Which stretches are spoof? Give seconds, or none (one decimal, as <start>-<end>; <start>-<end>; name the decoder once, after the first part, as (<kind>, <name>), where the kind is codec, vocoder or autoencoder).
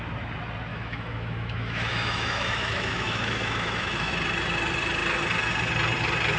0.7-4.1 (autoencoder, DAC-VAE)